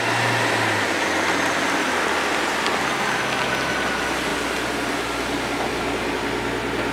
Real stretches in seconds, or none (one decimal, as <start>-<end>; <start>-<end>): 0.0-6.9